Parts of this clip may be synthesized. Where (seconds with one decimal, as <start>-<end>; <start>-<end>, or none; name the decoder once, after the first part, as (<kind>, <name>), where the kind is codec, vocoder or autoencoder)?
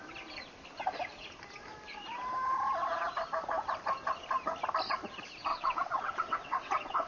5.5-7.1 (vocoder, WaveNeXt)